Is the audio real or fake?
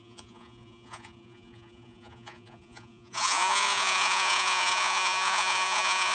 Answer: fake